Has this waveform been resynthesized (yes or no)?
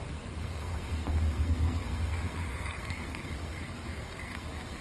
yes